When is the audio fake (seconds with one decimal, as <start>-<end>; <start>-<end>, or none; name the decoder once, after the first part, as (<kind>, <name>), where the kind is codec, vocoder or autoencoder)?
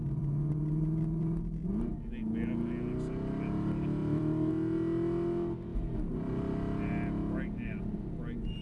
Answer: 0.0-1.2 (vocoder, BigVGAN v2); 4.0-4.5